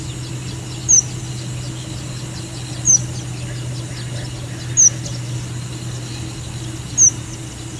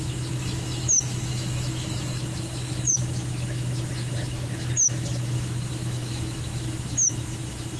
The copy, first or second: second